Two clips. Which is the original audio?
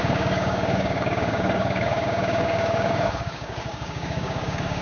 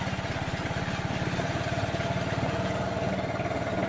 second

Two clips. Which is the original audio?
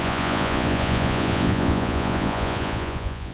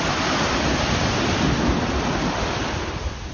second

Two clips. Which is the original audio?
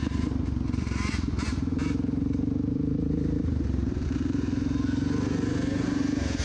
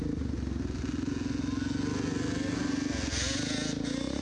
second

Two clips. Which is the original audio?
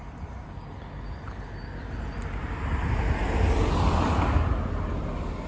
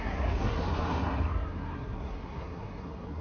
first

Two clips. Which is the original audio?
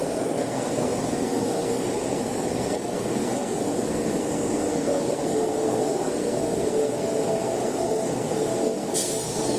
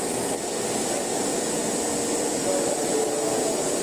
second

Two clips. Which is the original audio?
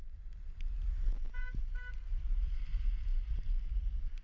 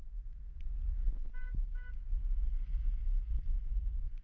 second